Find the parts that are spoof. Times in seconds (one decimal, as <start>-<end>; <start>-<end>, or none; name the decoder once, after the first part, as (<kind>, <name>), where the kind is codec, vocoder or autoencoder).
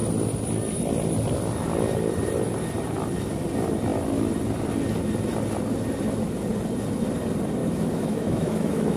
7.6-9.0 (autoencoder, DAC-VAE)